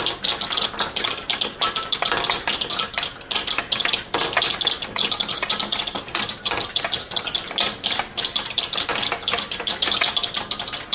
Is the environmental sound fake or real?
real